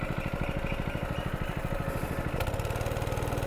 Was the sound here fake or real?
real